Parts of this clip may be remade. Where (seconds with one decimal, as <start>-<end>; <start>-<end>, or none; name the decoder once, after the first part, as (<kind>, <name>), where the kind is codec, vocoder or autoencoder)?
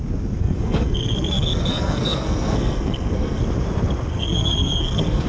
0.4-3.4 (codec, SNAC); 4.1-5.3